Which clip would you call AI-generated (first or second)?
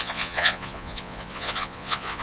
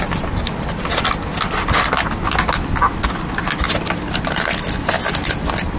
first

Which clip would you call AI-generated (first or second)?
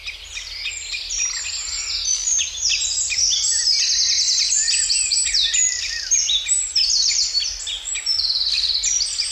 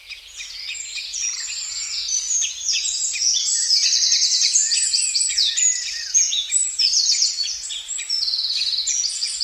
second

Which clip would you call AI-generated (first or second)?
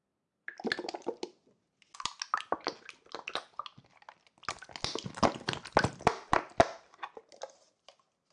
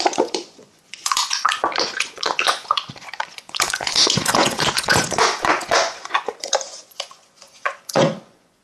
second